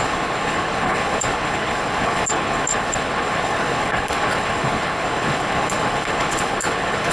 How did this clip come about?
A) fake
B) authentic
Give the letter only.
A